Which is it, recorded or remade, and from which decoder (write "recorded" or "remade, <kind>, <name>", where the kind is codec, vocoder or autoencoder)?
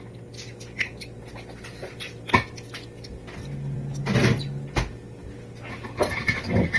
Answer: recorded